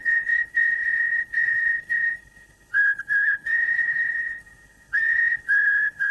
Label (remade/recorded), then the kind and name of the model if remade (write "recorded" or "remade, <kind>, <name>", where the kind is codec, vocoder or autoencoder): remade, codec, HILCodec